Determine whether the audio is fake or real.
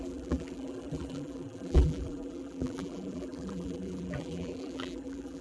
fake